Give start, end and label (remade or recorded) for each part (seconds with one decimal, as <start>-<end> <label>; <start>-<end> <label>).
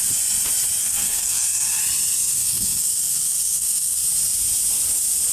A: 0.0-0.8 recorded; 0.8-1.8 remade; 1.8-2.3 recorded; 2.3-4.0 remade; 4.0-5.3 recorded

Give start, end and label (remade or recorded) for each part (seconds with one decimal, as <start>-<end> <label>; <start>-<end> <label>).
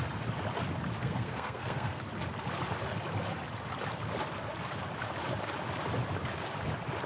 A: 0.0-1.0 recorded; 1.0-2.0 remade; 2.0-7.1 recorded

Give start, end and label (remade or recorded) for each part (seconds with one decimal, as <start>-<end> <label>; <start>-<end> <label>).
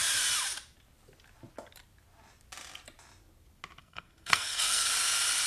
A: 0.0-3.8 recorded; 3.8-4.9 remade; 4.9-5.5 recorded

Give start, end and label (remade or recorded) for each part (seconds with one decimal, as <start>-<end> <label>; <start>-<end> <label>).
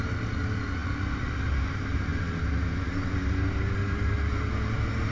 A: 0.0-5.1 recorded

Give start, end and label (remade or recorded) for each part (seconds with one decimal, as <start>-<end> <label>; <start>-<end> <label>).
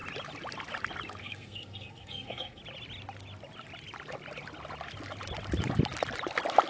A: 0.0-1.2 recorded; 1.2-2.6 remade; 2.6-6.7 recorded